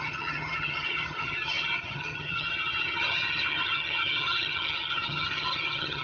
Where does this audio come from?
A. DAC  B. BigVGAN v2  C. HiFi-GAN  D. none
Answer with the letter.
C